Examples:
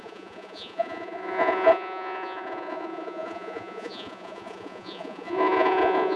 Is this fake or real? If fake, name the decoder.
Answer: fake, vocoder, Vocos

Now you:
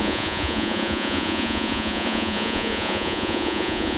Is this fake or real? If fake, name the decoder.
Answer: fake, vocoder, Vocos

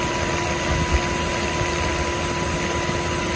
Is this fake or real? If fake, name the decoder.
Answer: real